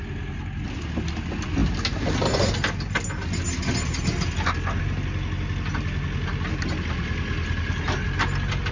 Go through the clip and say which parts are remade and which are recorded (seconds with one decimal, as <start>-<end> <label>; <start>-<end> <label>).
0.0-8.7 recorded